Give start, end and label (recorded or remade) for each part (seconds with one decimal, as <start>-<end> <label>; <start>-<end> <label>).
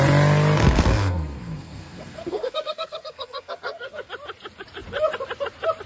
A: 0.0-0.6 recorded; 0.6-4.1 remade; 4.1-5.9 recorded